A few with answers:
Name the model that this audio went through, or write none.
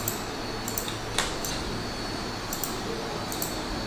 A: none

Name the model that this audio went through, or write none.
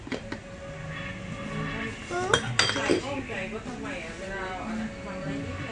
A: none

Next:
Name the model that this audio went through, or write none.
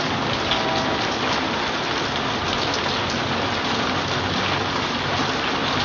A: none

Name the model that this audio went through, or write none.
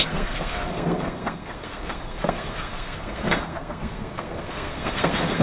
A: codec, SNAC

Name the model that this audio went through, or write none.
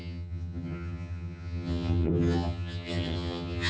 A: vocoder, HiFi-GAN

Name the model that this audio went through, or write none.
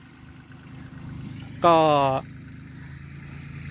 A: none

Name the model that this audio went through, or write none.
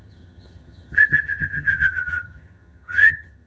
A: vocoder, HiFi-GAN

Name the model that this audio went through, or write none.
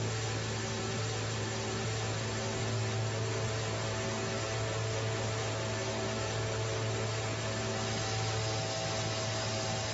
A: none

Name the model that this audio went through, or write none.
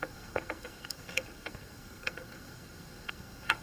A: codec, SNAC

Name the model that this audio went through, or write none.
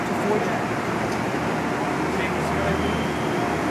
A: none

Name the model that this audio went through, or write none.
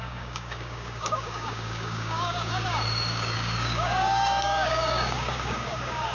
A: codec, DAC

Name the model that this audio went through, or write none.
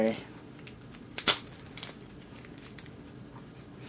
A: none